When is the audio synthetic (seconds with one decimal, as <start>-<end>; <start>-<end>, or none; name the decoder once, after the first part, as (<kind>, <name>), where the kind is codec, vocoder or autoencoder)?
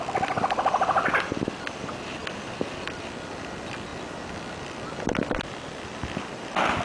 none